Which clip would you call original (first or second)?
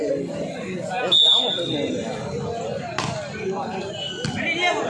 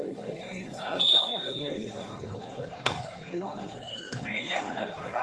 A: first